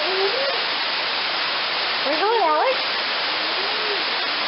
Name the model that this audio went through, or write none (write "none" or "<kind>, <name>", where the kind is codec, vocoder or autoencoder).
none